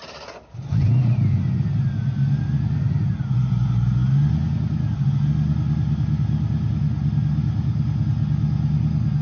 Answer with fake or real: real